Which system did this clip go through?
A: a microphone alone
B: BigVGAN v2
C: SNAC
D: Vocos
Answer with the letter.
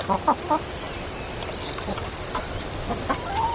A